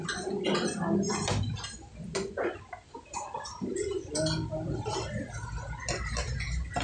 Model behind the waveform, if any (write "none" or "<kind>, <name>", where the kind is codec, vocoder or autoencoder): none